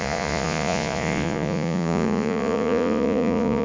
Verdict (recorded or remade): remade